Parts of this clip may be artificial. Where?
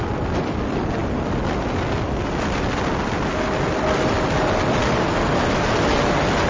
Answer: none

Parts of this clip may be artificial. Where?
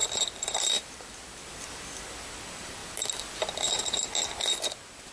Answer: 0.0-2.0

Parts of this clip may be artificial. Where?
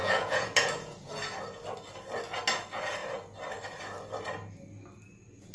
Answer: 0.0-1.1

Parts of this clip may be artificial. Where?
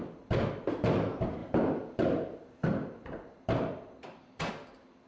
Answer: 1.4-4.5